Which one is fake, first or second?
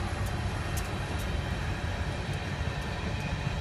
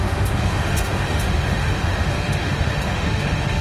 second